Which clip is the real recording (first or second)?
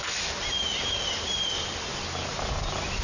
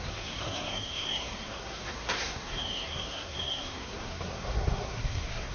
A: first